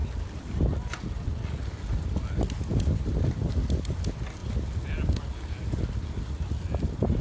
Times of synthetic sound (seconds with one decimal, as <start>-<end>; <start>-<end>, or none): 0.0-1.6; 2.7-3.3